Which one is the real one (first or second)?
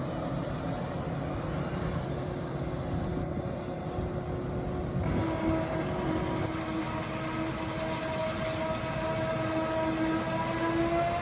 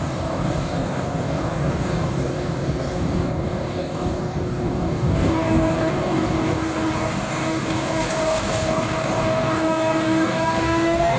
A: first